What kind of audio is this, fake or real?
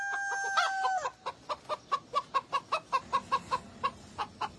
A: real